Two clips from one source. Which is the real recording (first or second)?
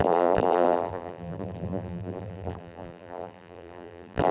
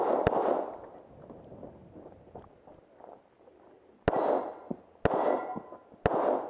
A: second